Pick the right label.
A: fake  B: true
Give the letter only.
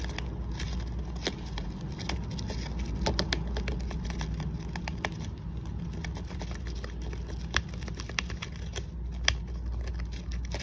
B